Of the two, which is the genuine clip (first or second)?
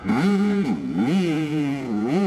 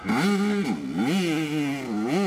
second